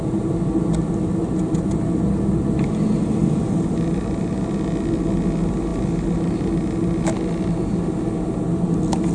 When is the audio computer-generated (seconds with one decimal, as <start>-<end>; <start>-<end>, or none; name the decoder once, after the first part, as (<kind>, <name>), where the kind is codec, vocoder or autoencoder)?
none

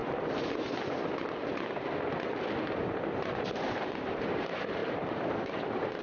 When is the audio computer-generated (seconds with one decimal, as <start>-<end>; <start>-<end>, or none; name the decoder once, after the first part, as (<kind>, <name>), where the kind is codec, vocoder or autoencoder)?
3.6-6.0 (vocoder, BigVGAN v2)

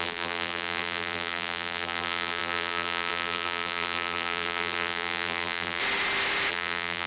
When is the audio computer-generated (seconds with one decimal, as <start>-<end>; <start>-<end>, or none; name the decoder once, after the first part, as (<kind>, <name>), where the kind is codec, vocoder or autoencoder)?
0.0-5.8 (vocoder, BigVGAN v2); 6.5-7.1

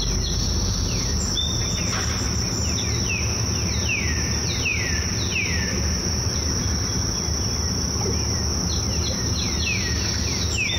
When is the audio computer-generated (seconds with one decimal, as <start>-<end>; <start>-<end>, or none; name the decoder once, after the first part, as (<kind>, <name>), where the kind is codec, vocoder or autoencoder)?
none

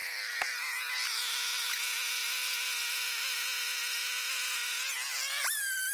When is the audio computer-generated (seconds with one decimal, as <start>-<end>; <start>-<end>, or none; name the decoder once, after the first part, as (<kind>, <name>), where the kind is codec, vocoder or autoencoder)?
none

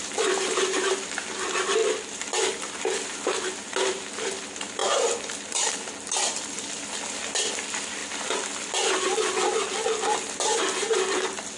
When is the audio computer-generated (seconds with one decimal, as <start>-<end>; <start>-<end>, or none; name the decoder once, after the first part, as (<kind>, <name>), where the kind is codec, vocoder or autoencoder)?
4.8-7.0 (vocoder, BigVGAN v2); 8.0-9.0